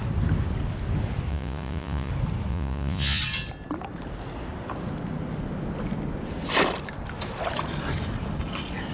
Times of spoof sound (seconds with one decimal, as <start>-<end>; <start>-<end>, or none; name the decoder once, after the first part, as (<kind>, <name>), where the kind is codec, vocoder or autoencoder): 1.3-2.1 (vocoder, Vocos); 2.5-3.2